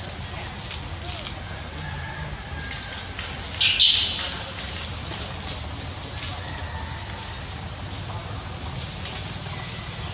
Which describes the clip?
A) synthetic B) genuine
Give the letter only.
B